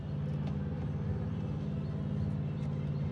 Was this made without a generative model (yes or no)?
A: yes